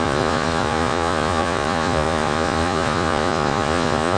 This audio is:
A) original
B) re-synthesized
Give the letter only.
B